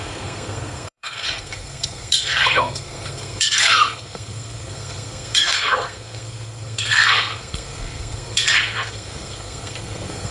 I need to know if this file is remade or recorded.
remade